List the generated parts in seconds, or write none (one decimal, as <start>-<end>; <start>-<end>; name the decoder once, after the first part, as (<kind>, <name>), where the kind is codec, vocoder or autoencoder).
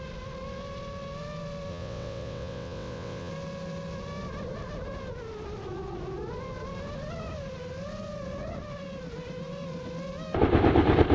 1.7-3.3 (vocoder, WaveNeXt)